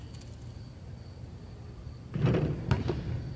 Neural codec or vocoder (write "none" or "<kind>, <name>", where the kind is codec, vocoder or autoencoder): none